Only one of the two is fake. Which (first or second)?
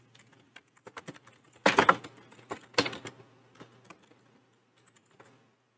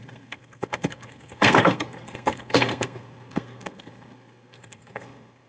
second